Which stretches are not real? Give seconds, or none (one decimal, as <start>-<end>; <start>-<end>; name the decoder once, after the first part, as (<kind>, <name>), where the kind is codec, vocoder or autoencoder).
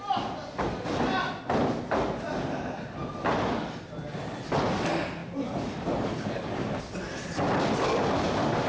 5.2-6.8 (vocoder, BigVGAN v2)